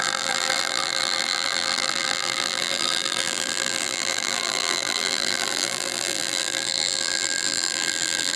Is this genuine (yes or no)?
no